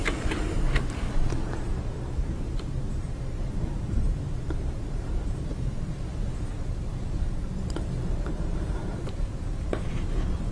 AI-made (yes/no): yes